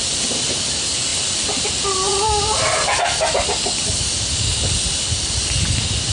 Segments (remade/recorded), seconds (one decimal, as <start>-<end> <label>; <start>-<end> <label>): 0.0-6.1 recorded